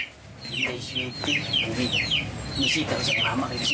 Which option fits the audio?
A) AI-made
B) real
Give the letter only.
B